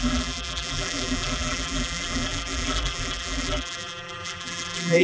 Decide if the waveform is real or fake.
fake